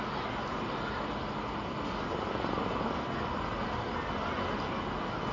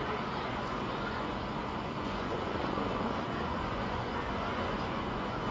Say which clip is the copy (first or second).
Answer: second